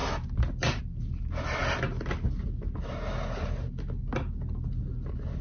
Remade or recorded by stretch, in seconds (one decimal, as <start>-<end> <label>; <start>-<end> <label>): 0.0-5.4 recorded

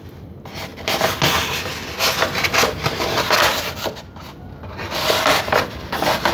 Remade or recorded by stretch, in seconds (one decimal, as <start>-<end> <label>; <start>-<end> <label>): 0.0-6.3 recorded

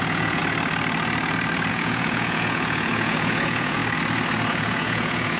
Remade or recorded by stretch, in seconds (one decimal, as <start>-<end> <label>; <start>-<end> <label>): 0.0-0.4 remade; 0.4-1.7 recorded; 1.7-3.8 remade; 3.8-4.5 recorded; 4.5-5.4 remade

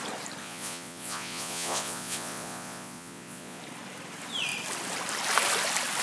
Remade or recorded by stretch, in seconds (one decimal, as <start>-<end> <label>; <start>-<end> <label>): 0.0-0.4 recorded; 0.4-3.6 remade; 3.6-6.0 recorded

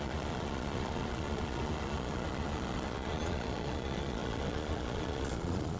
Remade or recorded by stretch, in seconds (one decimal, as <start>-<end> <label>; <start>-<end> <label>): 0.0-5.8 remade